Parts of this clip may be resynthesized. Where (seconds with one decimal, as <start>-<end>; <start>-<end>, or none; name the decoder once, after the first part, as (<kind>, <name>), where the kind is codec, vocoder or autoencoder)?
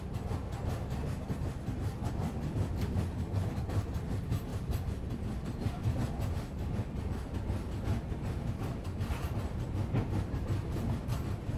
none